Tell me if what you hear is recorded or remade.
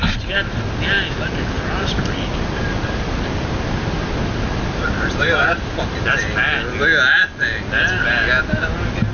recorded